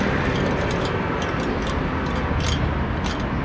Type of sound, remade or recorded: recorded